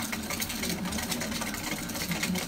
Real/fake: real